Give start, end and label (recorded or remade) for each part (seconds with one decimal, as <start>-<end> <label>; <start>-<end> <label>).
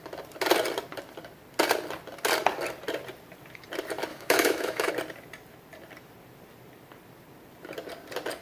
0.0-4.1 recorded; 4.1-4.9 remade; 4.9-8.4 recorded